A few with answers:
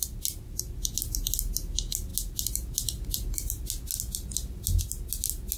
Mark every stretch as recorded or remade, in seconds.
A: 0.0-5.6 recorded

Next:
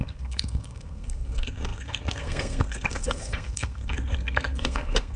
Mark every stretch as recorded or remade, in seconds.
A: 0.0-5.2 remade

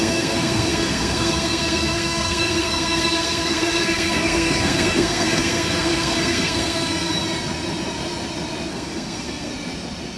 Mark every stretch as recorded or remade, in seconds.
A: 0.0-7.1 remade; 7.1-8.7 recorded; 8.7-9.5 remade; 9.5-10.2 recorded

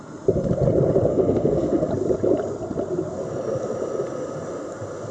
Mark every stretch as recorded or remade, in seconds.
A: 0.0-1.1 recorded; 1.1-1.9 remade; 1.9-5.1 recorded

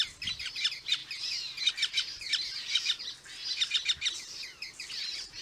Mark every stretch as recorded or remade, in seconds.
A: 0.0-5.4 recorded

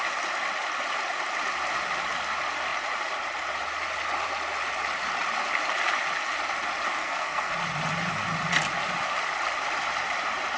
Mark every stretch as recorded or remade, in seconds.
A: 0.0-7.0 recorded; 7.0-7.5 remade; 7.5-10.6 recorded

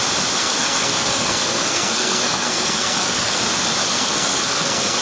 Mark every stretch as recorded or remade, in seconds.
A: 0.0-0.4 recorded; 0.4-3.4 remade; 3.4-3.8 recorded; 3.8-5.0 remade

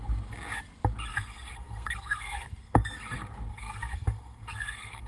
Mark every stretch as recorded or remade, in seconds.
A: 0.0-1.1 recorded; 1.1-2.9 remade; 2.9-3.5 recorded; 3.5-5.1 remade